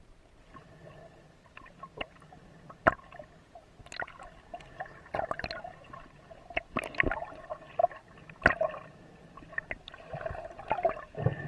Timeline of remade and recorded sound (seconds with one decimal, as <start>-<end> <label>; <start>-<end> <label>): 0.0-11.5 recorded